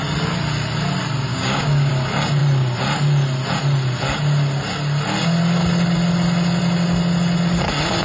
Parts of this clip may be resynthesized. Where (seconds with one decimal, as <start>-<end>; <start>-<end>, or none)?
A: 1.3-1.9